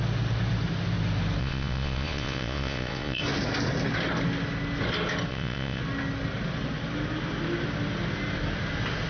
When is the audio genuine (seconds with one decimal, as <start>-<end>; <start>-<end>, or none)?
0.0-1.4; 3.2-5.3; 5.8-9.1